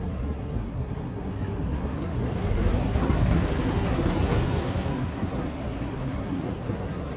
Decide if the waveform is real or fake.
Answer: fake